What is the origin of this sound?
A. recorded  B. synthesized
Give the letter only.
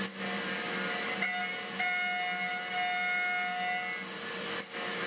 A